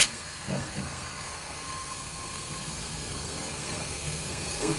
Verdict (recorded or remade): remade